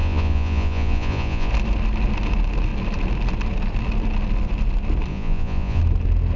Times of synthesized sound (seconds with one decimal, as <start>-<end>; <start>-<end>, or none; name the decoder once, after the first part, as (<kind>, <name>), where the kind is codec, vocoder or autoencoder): 0.0-1.5 (vocoder, Vocos); 5.1-5.8